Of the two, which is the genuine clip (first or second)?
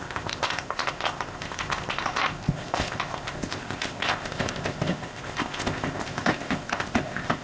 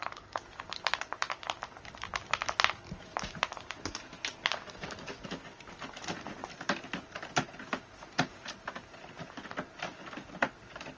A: second